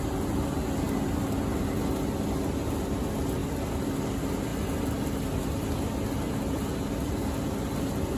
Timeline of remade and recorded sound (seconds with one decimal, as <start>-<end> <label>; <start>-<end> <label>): 0.0-8.2 recorded